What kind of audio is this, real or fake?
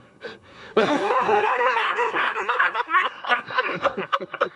fake